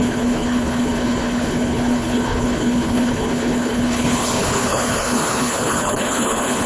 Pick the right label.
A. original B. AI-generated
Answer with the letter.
B